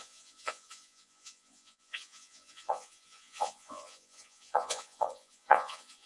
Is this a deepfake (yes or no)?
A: yes